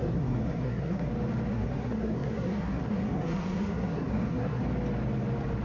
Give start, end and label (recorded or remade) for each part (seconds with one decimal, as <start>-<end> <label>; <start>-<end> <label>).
0.0-1.1 remade; 1.1-1.5 recorded; 1.5-4.6 remade; 4.6-5.6 recorded